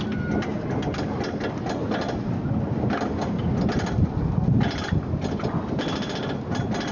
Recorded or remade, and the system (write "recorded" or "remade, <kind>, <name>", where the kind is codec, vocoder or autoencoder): recorded